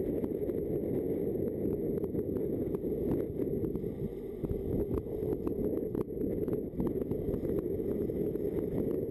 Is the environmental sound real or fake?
real